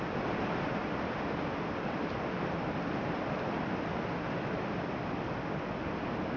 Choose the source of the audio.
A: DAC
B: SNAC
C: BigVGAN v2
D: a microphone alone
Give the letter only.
D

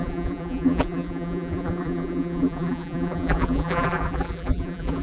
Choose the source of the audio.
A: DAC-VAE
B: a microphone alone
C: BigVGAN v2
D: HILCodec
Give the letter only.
C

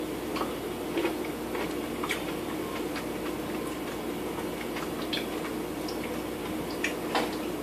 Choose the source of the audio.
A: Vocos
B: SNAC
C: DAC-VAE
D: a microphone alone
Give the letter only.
D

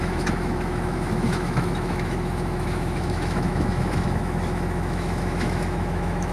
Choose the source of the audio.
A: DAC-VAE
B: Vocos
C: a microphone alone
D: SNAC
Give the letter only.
A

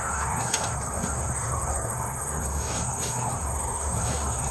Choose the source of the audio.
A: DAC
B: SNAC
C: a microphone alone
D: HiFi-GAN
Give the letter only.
B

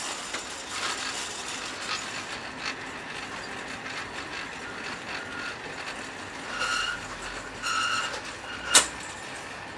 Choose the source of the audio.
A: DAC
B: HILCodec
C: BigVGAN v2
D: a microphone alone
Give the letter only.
D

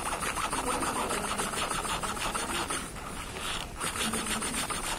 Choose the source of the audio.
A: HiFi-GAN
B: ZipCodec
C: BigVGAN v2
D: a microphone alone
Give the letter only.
C